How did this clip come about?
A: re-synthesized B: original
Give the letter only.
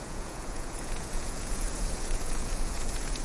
A